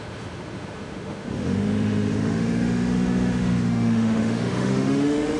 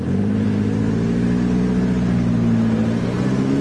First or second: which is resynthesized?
first